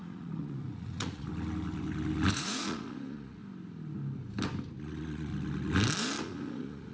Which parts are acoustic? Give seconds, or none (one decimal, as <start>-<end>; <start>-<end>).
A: 1.3-2.3; 3.4-4.8; 5.3-6.2